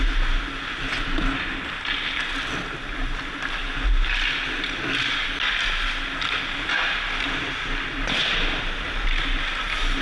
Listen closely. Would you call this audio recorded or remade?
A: recorded